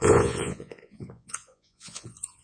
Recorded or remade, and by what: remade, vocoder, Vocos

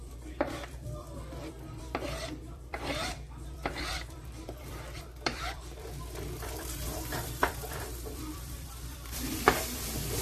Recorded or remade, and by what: remade, vocoder, BigVGAN v2